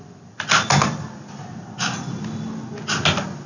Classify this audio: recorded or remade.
recorded